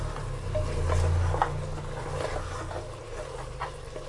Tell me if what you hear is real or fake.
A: real